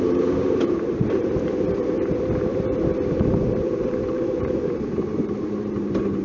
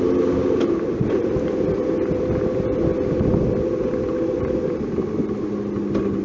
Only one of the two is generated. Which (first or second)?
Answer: first